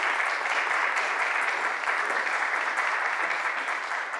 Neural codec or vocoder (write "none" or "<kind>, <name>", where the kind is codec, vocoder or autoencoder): vocoder, BigVGAN v2